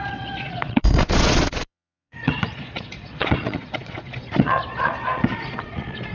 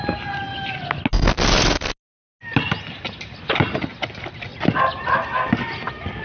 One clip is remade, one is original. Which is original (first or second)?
second